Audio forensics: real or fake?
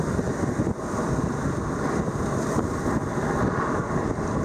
fake